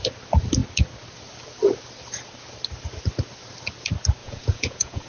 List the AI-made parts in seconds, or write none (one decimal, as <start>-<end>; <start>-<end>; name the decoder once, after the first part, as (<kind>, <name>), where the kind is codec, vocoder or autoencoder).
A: 4.2-5.1 (vocoder, Vocos)